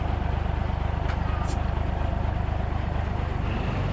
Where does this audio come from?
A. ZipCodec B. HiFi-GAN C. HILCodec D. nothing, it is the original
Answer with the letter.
D